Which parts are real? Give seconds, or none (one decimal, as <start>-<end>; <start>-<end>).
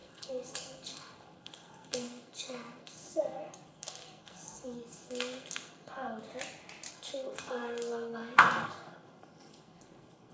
6.3-6.9